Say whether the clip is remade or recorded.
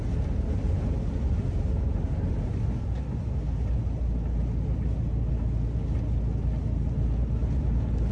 recorded